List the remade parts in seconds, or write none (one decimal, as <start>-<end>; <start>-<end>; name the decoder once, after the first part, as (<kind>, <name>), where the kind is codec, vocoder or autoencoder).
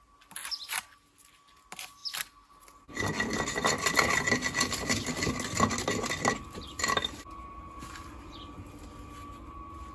none